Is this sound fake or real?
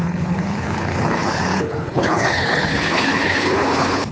fake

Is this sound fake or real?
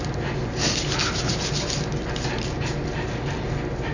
real